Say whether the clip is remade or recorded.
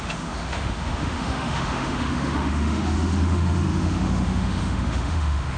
remade